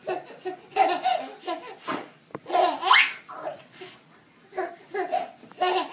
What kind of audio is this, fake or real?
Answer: real